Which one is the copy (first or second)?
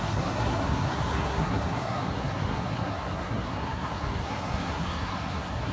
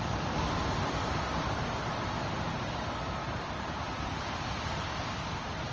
first